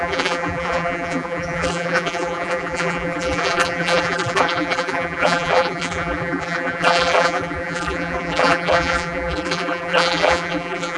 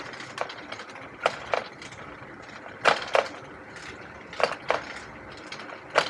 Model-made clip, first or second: first